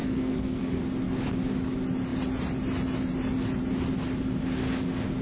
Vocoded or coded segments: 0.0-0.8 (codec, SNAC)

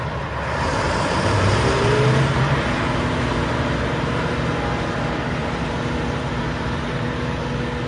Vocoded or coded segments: 0.9-4.2 (vocoder, BigVGAN v2); 5.4-7.4

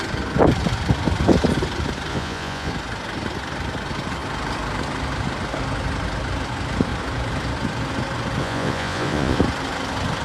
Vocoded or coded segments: 2.1-2.7 (vocoder, Vocos); 8.4-9.4